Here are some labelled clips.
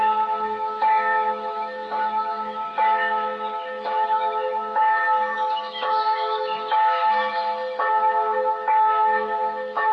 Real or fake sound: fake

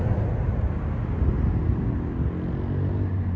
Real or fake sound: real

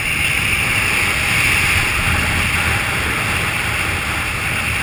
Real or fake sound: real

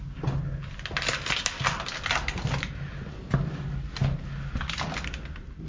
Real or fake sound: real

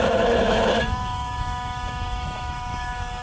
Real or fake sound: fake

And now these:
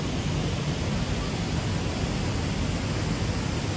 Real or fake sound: real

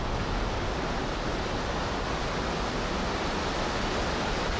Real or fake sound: real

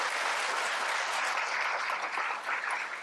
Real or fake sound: real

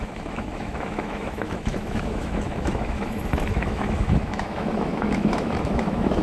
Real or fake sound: fake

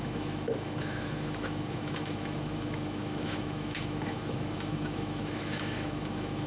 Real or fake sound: fake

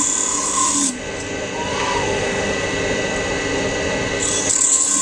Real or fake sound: real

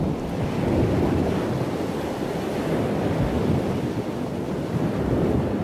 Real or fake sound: real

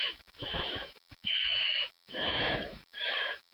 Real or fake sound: fake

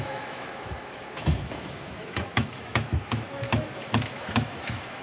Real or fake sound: fake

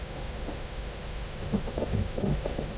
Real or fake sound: fake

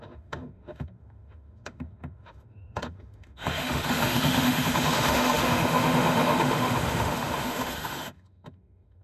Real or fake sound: fake